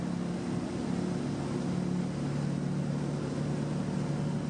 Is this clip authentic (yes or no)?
yes